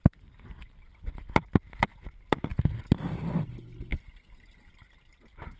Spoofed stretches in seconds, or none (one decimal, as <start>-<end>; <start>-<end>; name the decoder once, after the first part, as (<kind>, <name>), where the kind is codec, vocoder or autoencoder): none